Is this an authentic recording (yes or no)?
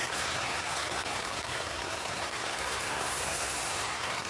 no